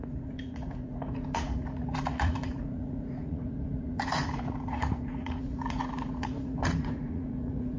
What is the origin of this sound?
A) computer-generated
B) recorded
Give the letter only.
A